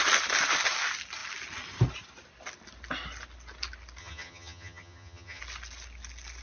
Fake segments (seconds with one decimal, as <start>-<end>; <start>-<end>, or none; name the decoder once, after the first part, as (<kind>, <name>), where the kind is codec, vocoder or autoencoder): 4.0-5.4 (vocoder, HiFi-GAN)